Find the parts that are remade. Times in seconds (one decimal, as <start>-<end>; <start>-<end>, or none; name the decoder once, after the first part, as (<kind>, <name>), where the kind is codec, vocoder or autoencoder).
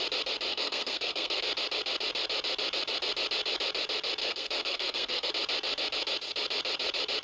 0.5-1.4 (codec, SNAC); 4.2-5.3